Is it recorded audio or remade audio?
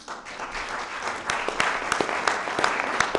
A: recorded